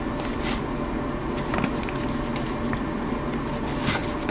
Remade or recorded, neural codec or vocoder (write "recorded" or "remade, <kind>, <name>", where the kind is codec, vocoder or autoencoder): recorded